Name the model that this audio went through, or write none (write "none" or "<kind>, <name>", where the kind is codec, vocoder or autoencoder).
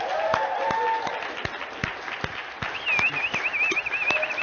none